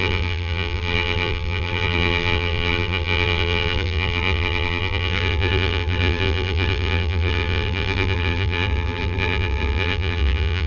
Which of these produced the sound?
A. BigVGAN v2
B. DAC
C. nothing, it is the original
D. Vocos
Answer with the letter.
A